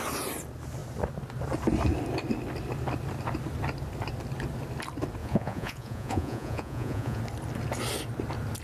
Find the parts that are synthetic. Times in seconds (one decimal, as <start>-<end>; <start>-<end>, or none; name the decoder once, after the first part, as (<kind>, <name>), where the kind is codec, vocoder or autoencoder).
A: 5.2-7.2 (vocoder, Vocos)